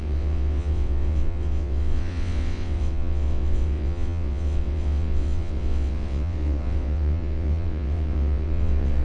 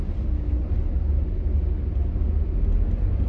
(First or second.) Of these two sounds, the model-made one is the first